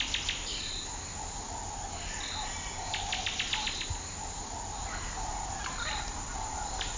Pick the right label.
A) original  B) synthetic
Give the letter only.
A